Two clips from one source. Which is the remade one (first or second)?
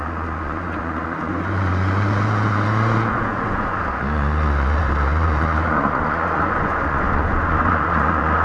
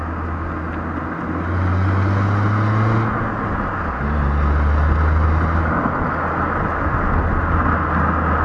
first